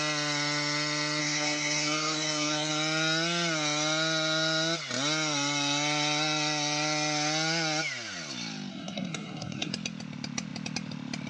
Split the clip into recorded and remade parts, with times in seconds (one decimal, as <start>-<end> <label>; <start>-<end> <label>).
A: 0.0-1.2 recorded; 1.2-2.7 remade; 2.7-8.7 recorded; 8.7-9.7 remade; 9.7-11.3 recorded

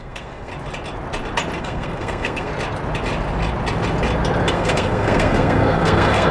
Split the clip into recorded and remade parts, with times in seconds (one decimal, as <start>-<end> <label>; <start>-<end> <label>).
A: 0.0-0.5 remade; 0.5-1.6 recorded; 1.6-2.5 remade; 2.5-4.5 recorded; 4.5-6.3 remade